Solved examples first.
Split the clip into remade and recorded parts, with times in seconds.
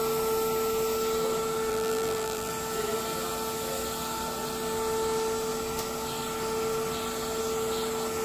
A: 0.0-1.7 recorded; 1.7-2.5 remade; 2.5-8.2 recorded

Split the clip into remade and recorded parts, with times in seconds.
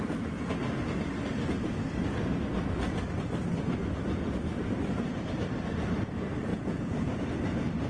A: 0.0-6.5 recorded; 6.5-7.1 remade; 7.1-7.9 recorded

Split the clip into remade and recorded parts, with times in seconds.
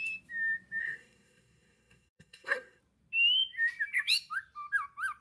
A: 0.0-0.8 recorded; 0.8-2.8 remade; 2.8-5.2 recorded